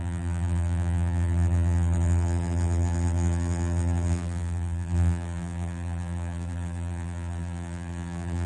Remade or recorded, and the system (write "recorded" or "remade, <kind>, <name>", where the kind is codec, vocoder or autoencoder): remade, vocoder, BigVGAN v2